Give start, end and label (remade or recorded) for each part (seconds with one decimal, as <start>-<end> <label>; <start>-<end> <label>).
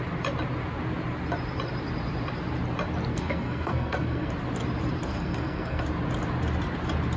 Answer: 0.0-3.1 recorded; 3.1-4.3 remade; 4.3-5.1 recorded; 5.1-5.8 remade; 5.8-7.2 recorded